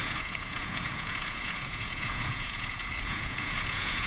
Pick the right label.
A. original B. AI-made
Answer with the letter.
B